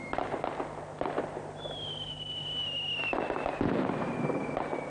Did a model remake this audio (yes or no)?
no